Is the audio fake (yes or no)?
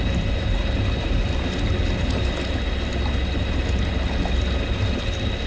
no